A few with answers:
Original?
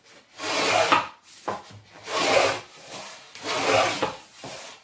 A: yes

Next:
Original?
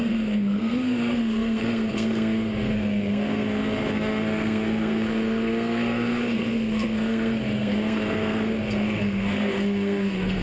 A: no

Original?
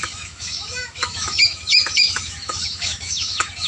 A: no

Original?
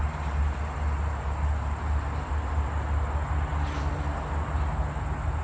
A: yes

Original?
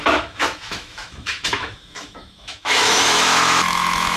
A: no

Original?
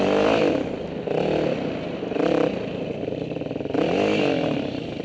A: yes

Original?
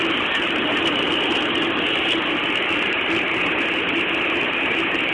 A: yes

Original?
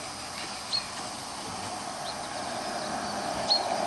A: yes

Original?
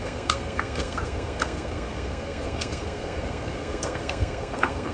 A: no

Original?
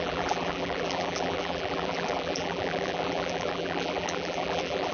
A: no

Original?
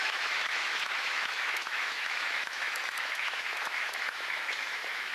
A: no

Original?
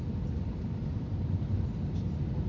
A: yes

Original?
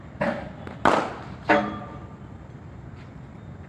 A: yes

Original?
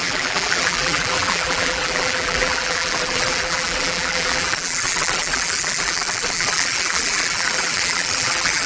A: no